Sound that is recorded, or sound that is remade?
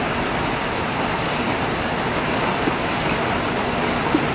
recorded